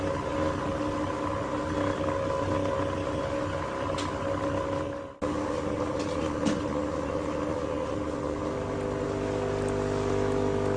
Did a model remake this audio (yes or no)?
no